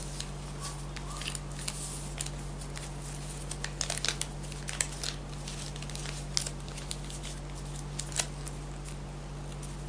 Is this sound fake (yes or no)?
no